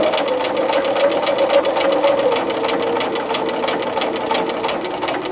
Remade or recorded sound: recorded